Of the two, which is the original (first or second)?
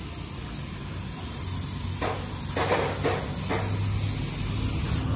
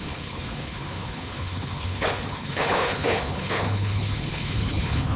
first